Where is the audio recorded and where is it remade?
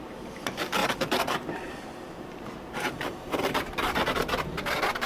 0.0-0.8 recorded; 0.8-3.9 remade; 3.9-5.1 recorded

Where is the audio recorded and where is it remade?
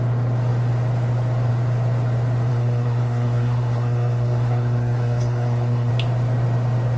0.0-2.5 recorded; 2.5-5.9 remade; 5.9-7.0 recorded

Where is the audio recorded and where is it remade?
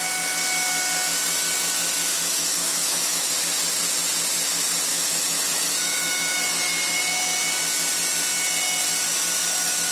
0.0-2.1 recorded; 2.1-3.3 remade; 3.3-4.9 recorded; 4.9-6.4 remade; 6.4-9.9 recorded